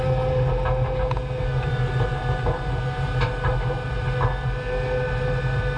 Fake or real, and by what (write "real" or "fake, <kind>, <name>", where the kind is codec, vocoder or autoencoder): real